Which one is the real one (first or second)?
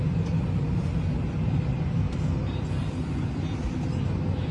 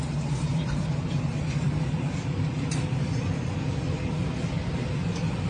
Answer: first